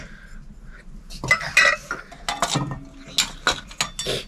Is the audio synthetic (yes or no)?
no